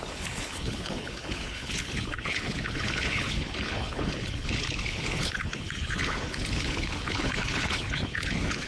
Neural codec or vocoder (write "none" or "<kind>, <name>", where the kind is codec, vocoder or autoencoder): codec, HILCodec